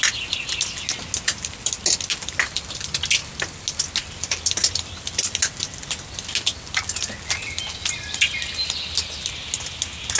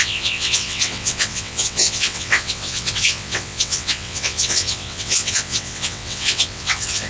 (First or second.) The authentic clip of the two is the first